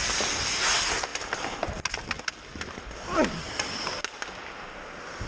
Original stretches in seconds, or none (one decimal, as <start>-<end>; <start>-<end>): 0.0-5.3